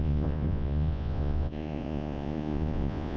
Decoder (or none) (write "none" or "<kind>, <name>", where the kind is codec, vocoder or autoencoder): vocoder, Vocos